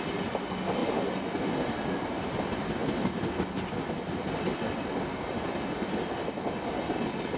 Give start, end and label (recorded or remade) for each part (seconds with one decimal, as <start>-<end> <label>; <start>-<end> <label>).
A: 0.0-7.4 recorded